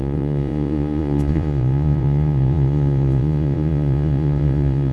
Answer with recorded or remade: remade